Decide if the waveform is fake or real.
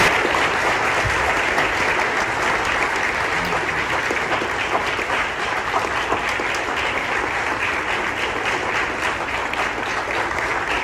real